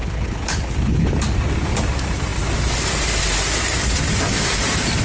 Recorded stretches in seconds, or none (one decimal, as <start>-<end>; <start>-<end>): 1.1-5.0